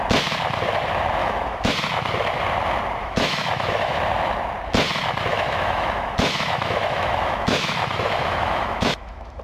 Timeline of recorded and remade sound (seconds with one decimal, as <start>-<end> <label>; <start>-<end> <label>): 0.0-1.2 recorded; 1.2-1.7 remade; 1.7-3.0 recorded; 3.0-4.0 remade; 4.0-5.3 recorded; 5.3-9.4 remade